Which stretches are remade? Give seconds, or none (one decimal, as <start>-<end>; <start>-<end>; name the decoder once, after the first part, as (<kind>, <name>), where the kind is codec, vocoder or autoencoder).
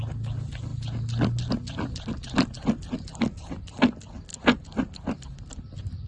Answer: none